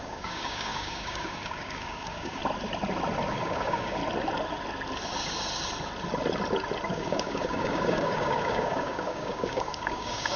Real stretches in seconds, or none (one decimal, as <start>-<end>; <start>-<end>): 2.4-3.3; 4.0-6.9